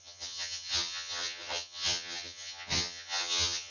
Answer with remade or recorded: remade